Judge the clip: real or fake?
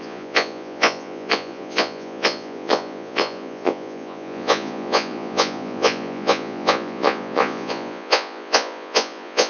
fake